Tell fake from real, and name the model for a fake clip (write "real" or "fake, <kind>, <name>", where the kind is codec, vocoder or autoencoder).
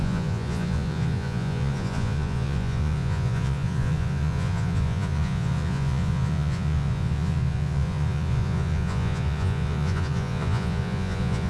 fake, vocoder, Vocos